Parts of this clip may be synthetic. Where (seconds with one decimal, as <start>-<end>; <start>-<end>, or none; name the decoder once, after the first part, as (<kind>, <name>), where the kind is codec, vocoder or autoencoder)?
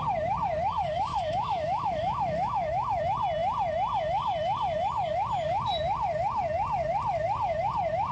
1.1-3.0 (autoencoder, DAC-VAE)